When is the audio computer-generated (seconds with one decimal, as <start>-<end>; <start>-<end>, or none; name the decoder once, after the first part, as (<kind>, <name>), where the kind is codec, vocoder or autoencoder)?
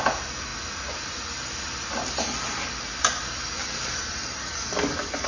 4.4-5.3 (codec, DAC)